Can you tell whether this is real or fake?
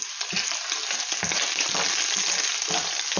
real